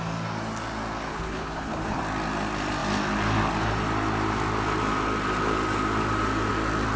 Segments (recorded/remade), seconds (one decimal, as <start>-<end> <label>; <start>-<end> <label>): 0.0-1.1 recorded; 1.1-2.0 remade; 2.0-7.0 recorded